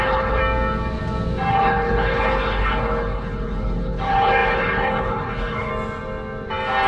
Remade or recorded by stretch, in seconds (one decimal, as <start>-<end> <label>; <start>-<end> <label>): 0.0-0.4 remade; 0.4-1.5 recorded; 1.5-5.7 remade; 5.7-6.9 recorded